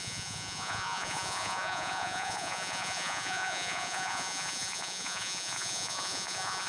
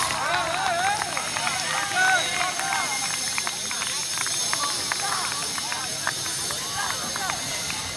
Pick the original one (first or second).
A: second